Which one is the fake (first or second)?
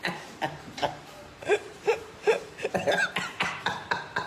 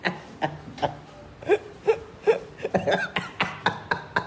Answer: first